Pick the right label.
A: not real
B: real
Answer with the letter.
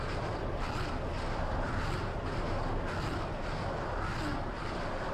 B